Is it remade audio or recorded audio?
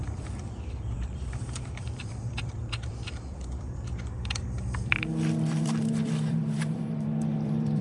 remade